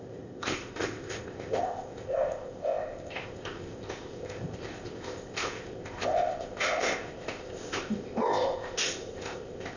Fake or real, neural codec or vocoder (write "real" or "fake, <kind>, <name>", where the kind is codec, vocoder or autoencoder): fake, codec, ZipCodec